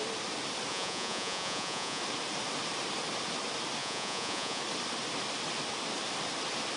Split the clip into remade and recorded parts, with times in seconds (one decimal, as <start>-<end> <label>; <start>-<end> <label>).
0.0-0.7 recorded; 0.7-2.0 remade; 2.0-3.8 recorded; 3.8-4.6 remade; 4.6-6.8 recorded